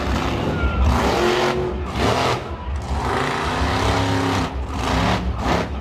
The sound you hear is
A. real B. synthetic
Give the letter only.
A